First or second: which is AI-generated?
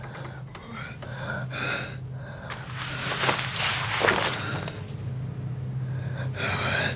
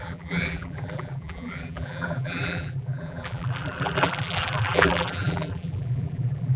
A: second